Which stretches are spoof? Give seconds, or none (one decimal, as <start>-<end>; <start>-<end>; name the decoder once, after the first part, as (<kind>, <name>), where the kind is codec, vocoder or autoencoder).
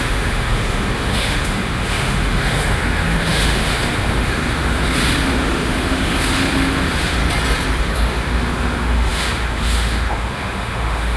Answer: 0.0-7.2 (autoencoder, DAC-VAE); 7.8-11.2